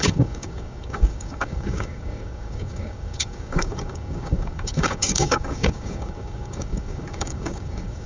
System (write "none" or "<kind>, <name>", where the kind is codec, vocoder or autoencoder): codec, DAC